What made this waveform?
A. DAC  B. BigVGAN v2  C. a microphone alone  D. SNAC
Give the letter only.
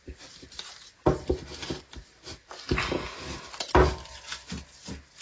C